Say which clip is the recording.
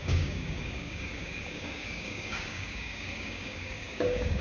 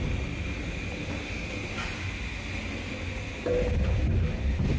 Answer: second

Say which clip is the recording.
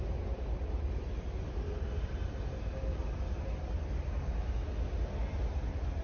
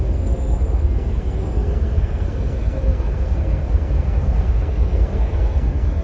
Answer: first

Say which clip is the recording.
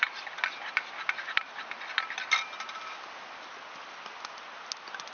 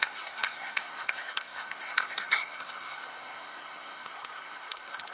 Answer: first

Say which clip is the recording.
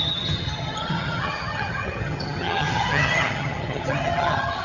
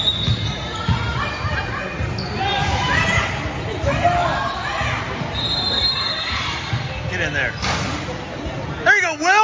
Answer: second